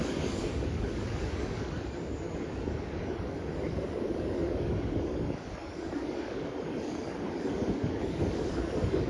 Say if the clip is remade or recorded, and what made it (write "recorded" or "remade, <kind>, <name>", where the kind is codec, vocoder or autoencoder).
remade, codec, DAC